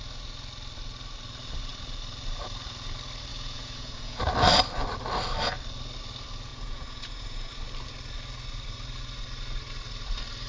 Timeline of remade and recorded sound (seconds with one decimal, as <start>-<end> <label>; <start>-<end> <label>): 0.0-3.3 recorded; 3.3-4.2 remade; 4.2-6.5 recorded; 6.5-7.5 remade; 7.5-10.5 recorded